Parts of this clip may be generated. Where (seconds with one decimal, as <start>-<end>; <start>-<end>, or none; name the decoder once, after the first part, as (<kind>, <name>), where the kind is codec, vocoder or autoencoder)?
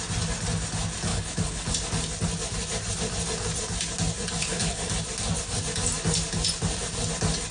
1.1-1.7 (codec, HILCodec); 4.4-4.9